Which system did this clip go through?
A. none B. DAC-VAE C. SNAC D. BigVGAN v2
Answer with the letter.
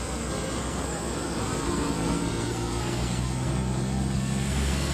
C